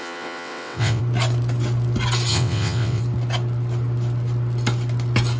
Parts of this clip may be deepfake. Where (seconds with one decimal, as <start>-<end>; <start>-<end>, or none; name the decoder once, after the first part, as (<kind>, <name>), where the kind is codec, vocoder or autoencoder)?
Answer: 0.0-1.0 (vocoder, WaveNeXt); 2.3-3.0